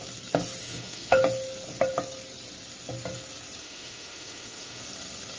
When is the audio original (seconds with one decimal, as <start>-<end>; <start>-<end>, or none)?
0.0-0.6; 1.2-3.6; 4.8-5.4